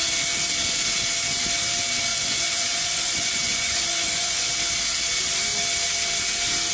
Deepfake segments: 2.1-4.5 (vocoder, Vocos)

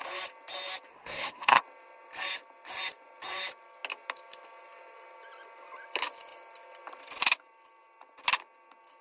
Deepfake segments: 0.9-1.6 (codec, SNAC)